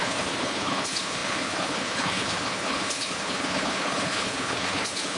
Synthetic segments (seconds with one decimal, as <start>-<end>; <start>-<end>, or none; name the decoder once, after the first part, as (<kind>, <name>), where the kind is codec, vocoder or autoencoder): 0.0-5.2 (codec, HILCodec)